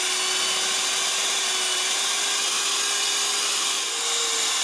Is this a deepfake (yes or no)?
no